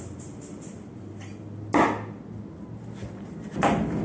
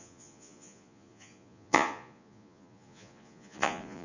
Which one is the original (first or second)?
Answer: first